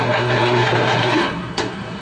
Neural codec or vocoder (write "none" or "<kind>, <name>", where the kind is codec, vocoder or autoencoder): codec, SNAC